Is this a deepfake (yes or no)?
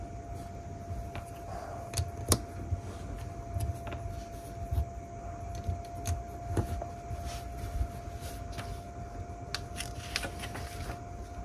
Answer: no